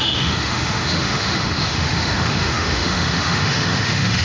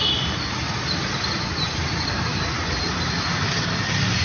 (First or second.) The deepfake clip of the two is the first